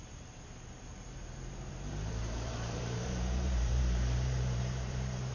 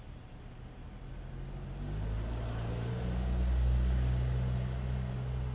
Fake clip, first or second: first